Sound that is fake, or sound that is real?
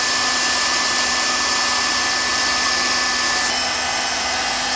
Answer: real